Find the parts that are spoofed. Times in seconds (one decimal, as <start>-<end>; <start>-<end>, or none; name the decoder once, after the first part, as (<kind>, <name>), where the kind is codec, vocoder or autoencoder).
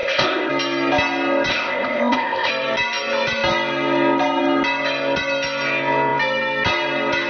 0.0-0.5 (codec, ZipCodec); 1.5-2.5